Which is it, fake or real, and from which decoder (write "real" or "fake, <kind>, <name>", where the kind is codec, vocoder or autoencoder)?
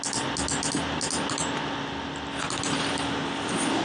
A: real